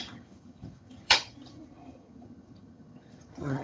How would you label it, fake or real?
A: fake